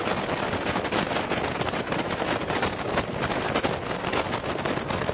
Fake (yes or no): no